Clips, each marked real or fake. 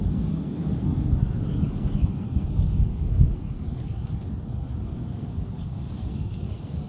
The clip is fake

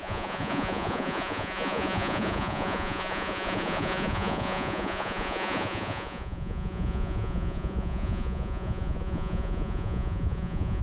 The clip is fake